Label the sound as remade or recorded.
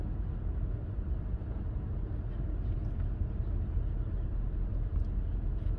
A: recorded